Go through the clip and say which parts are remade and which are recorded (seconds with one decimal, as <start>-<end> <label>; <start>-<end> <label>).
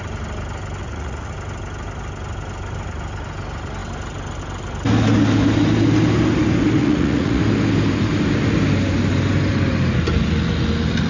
0.0-0.8 recorded; 0.8-1.3 remade; 1.3-6.8 recorded; 6.8-7.4 remade; 7.4-11.1 recorded